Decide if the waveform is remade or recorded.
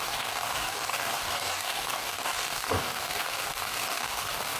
remade